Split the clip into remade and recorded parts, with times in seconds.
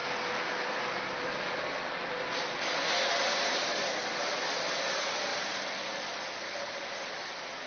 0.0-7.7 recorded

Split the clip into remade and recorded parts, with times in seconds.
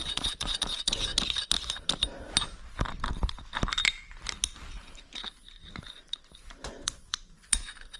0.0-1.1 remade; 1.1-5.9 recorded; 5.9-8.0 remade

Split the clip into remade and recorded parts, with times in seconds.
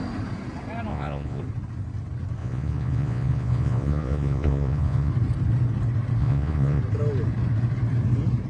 0.0-0.9 recorded; 0.9-1.4 remade; 1.4-2.4 recorded; 2.4-5.1 remade; 5.1-6.2 recorded; 6.2-6.8 remade; 6.8-8.5 recorded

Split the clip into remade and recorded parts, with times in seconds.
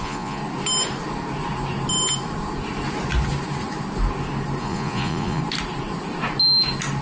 0.0-0.4 remade; 0.4-4.6 recorded; 4.6-5.4 remade; 5.4-7.0 recorded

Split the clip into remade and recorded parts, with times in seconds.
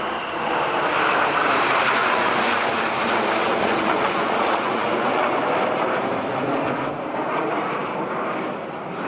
0.0-2.0 recorded; 2.0-2.7 remade; 2.7-3.4 recorded; 3.4-5.4 remade; 5.4-9.1 recorded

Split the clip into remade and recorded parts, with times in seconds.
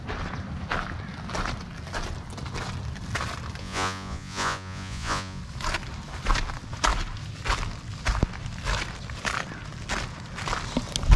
0.0-3.6 recorded; 3.6-5.4 remade; 5.4-11.2 recorded